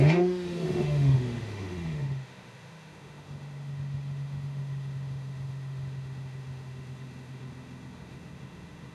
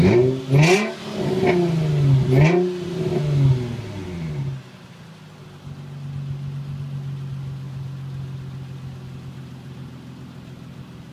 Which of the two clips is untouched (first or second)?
second